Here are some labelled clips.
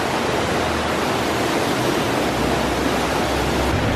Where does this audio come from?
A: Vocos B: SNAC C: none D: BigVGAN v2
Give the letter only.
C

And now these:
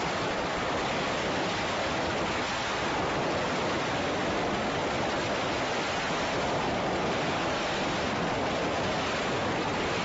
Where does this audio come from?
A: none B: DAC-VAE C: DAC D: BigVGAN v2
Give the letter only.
A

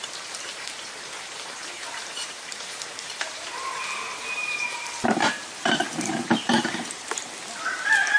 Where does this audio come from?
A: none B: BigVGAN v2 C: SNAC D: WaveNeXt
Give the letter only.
B